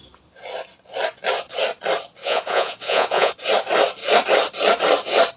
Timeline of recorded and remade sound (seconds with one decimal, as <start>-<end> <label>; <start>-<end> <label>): 0.0-2.2 recorded; 2.2-3.3 remade; 3.3-5.4 recorded